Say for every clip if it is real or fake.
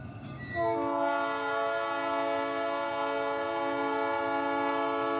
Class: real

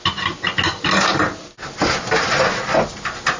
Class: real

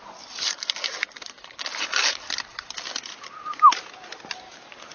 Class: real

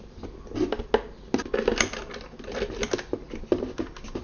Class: real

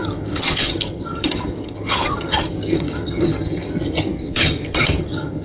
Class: fake